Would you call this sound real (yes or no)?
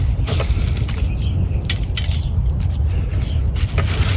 yes